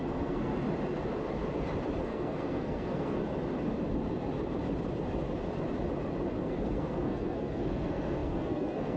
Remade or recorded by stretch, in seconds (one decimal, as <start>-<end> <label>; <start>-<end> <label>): 0.0-0.5 remade; 0.5-2.0 recorded; 2.0-3.2 remade; 3.2-6.4 recorded; 6.4-9.0 remade